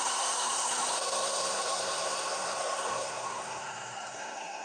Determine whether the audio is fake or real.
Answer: fake